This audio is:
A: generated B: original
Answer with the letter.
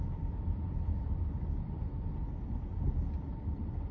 B